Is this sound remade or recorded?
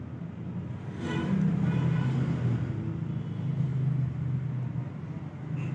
recorded